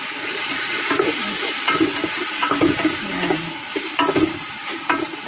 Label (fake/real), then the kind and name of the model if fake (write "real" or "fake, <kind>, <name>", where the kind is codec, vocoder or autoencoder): fake, vocoder, BigVGAN v2